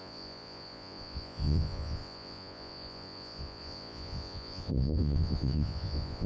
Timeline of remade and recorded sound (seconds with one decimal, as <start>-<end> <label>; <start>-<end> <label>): 0.0-6.3 remade